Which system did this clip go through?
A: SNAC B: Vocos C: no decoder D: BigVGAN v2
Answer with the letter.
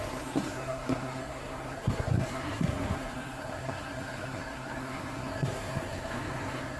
A